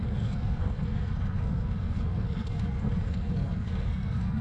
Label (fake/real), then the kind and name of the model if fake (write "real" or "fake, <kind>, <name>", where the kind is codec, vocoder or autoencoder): fake, codec, SNAC